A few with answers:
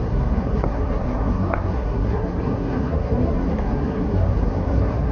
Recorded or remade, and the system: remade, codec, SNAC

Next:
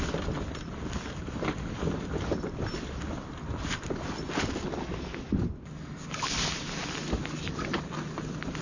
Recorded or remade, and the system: recorded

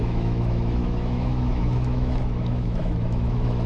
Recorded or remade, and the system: remade, autoencoder, DAC-VAE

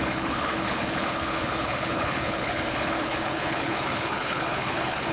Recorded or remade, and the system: remade, codec, HILCodec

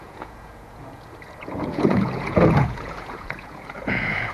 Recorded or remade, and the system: remade, vocoder, Vocos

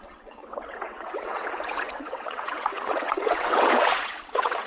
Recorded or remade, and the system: remade, vocoder, WaveNeXt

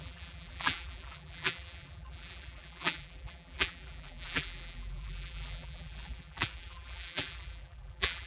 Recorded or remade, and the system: remade, vocoder, BigVGAN v2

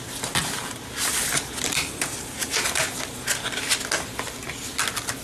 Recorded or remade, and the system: recorded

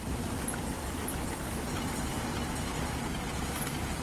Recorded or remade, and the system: recorded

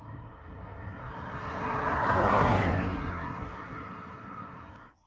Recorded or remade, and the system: remade, codec, SNAC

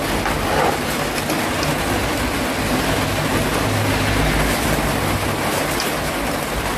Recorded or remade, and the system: recorded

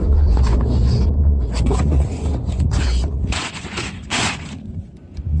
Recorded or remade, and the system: remade, vocoder, Vocos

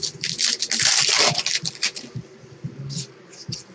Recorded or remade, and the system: recorded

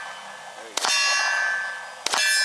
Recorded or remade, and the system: recorded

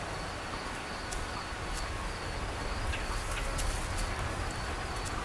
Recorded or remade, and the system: recorded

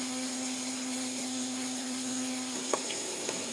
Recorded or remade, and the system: remade, codec, SNAC